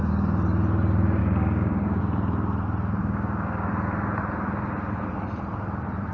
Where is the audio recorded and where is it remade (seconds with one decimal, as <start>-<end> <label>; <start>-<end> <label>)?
0.0-1.2 recorded; 1.2-2.0 remade; 2.0-3.0 recorded; 3.0-3.7 remade; 3.7-6.1 recorded